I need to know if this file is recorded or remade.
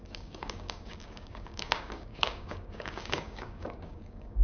remade